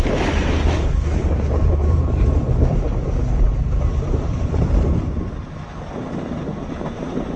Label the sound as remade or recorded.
remade